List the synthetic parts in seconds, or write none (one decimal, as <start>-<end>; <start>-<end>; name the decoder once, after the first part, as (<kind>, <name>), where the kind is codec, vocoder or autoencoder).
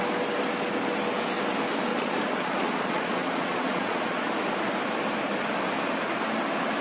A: 1.9-4.3 (vocoder, Vocos)